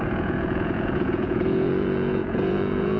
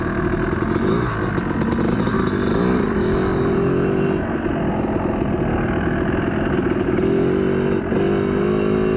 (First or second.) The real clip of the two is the second